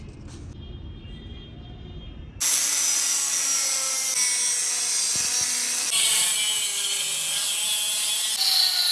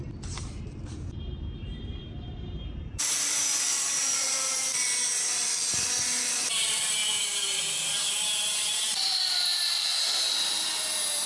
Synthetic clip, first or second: second